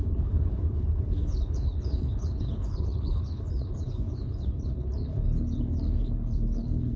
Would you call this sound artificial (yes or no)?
yes